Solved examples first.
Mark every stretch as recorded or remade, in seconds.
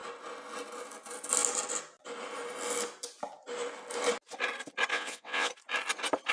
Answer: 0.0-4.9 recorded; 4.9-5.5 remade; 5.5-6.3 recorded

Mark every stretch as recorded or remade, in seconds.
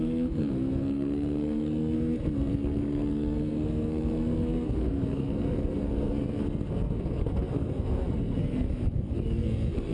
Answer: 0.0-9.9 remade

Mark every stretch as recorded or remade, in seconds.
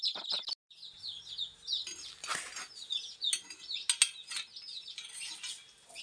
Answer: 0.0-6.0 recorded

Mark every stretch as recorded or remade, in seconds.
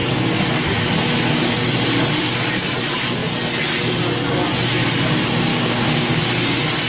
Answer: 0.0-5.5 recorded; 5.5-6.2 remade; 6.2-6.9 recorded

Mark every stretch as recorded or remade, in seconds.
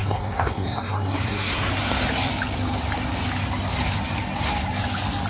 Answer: 0.0-1.7 remade; 1.7-5.3 recorded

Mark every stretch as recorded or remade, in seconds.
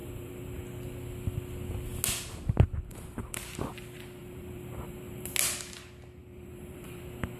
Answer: 0.0-0.6 remade; 0.6-2.9 recorded; 2.9-3.7 remade; 3.7-4.2 recorded; 4.2-5.3 remade; 5.3-6.2 recorded; 6.2-7.0 remade; 7.0-7.4 recorded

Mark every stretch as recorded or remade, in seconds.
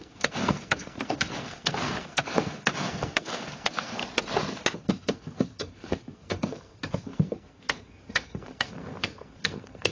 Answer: 0.0-4.0 remade; 4.0-4.7 recorded; 4.7-9.9 remade